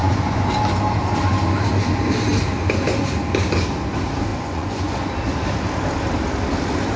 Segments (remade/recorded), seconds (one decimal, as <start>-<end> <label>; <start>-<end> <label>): 0.0-0.5 remade; 0.5-4.3 recorded; 4.3-5.1 remade; 5.1-7.0 recorded